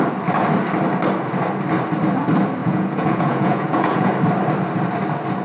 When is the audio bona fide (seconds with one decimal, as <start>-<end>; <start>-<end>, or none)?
0.0-2.6; 4.1-5.4